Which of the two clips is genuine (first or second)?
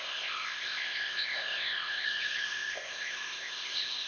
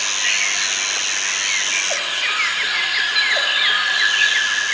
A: second